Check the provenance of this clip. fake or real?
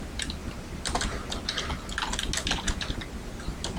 real